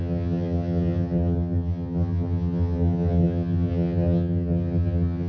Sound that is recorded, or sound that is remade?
remade